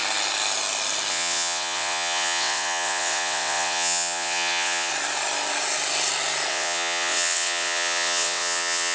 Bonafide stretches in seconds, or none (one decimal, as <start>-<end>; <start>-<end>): 0.0-1.1; 4.9-6.5